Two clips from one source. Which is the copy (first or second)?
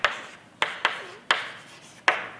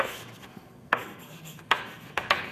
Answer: second